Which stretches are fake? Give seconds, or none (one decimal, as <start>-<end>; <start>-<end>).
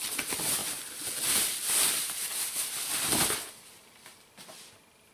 0.6-3.7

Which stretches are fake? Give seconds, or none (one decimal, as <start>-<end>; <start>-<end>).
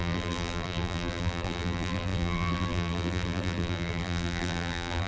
0.0-5.1